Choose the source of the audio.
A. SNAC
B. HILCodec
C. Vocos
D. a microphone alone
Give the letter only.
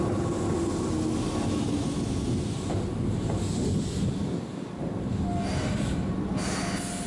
D